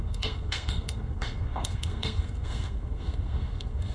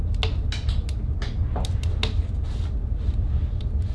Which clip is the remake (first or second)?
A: first